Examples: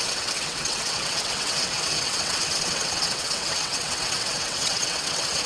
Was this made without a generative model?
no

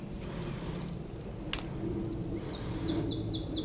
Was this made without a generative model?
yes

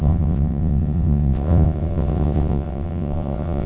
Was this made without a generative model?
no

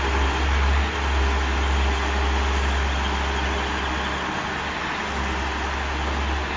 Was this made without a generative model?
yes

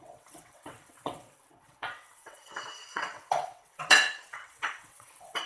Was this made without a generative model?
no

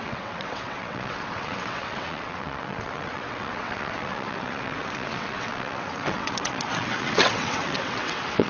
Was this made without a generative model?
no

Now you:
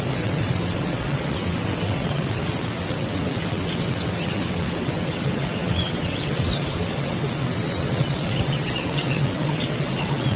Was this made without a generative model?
no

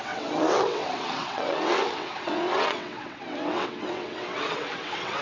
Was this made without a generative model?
no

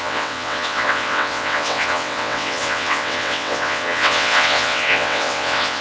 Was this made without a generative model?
no